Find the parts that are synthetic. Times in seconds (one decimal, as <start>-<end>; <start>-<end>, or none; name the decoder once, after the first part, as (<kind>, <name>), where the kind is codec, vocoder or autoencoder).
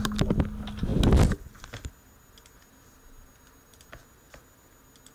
none